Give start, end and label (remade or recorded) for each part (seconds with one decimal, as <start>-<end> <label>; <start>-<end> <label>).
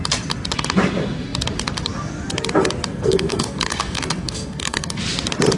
0.0-2.9 recorded; 2.9-5.0 remade; 5.0-5.6 recorded